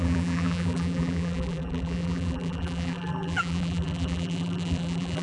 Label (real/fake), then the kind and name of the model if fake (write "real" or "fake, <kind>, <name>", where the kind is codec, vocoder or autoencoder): fake, vocoder, BigVGAN v2